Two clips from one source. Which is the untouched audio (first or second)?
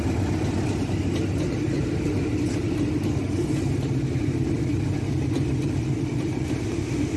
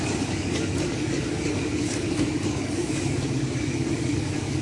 first